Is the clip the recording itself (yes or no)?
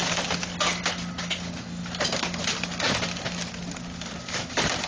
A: yes